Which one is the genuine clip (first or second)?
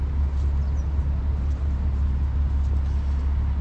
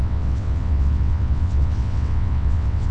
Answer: first